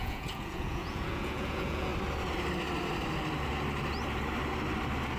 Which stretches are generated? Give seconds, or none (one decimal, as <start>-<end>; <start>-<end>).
0.0-1.9